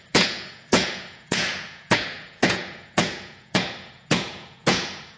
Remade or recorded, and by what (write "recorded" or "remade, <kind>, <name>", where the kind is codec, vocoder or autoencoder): remade, vocoder, Vocos